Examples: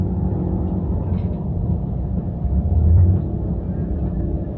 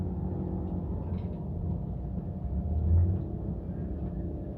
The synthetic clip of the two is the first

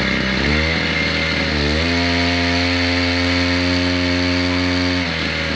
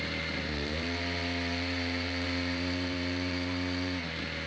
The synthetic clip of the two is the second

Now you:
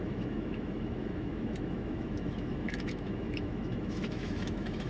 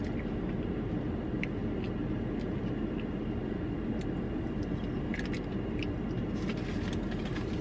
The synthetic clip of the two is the first